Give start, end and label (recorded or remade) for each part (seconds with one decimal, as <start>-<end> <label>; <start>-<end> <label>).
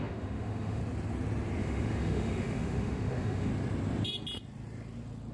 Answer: 0.0-0.8 remade; 0.8-1.6 recorded; 1.6-3.5 remade; 3.5-5.3 recorded